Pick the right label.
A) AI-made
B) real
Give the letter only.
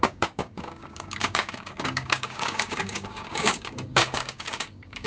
A